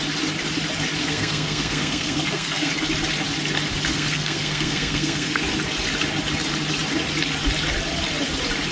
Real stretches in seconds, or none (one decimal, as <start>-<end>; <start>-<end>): 0.0-1.0; 2.7-3.9; 5.4-8.7